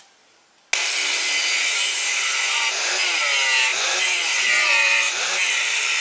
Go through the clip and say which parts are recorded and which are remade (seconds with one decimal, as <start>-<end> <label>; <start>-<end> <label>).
0.0-1.6 recorded; 1.6-2.9 remade; 2.9-3.7 recorded; 3.7-5.2 remade; 5.2-6.0 recorded